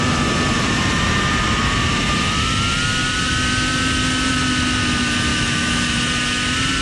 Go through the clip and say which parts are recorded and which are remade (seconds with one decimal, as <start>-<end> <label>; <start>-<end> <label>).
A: 0.0-5.3 recorded; 5.3-6.0 remade; 6.0-6.8 recorded